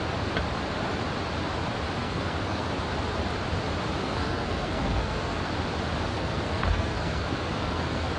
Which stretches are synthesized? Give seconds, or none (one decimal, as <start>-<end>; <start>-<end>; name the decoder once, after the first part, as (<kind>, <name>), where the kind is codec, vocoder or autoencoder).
2.0-2.7 (codec, SNAC); 4.0-5.5; 6.1-8.2